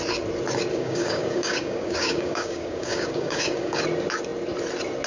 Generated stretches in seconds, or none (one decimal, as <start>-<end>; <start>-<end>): 0.7-3.8

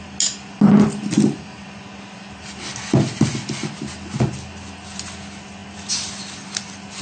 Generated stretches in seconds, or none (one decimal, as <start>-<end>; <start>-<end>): none